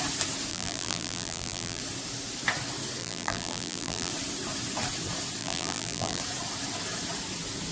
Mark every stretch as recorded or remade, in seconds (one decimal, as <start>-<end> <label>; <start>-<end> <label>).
0.0-0.5 recorded; 0.5-1.8 remade; 1.8-3.0 recorded; 3.0-4.1 remade; 4.1-5.4 recorded; 5.4-6.2 remade; 6.2-7.7 recorded